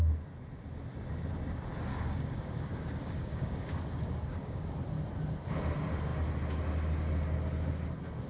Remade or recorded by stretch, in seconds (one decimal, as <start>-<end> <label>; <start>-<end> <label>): 0.0-1.9 recorded; 1.9-4.7 remade; 4.7-8.3 recorded